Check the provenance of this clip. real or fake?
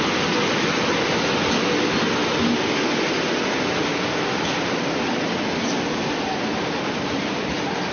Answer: real